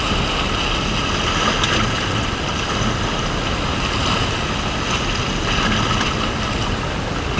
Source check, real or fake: real